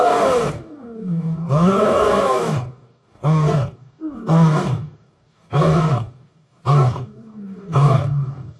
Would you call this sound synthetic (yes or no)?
yes